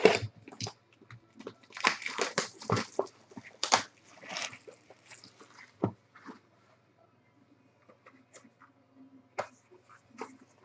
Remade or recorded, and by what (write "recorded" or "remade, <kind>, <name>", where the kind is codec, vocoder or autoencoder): recorded